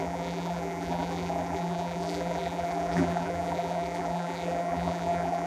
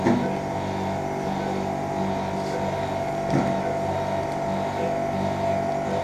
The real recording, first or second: second